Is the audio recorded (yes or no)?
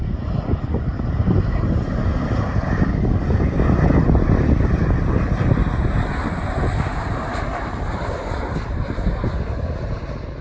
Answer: yes